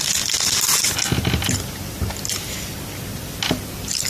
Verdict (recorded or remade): recorded